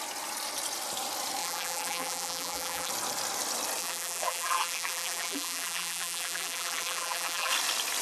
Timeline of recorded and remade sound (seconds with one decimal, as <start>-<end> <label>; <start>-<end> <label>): 0.0-1.4 recorded; 1.4-2.9 remade; 2.9-3.8 recorded; 3.8-7.5 remade; 7.5-8.0 recorded